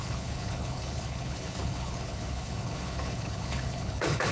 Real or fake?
fake